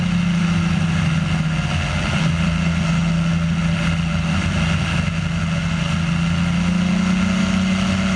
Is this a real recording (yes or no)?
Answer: yes